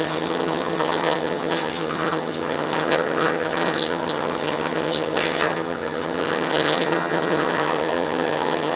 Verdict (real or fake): fake